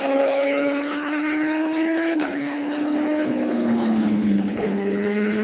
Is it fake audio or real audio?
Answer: fake